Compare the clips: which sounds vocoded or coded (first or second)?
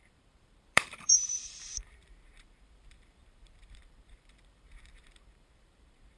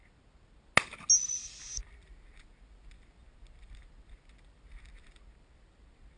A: first